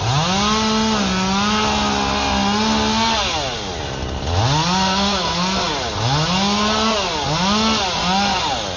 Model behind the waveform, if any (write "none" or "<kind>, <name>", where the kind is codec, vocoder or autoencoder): none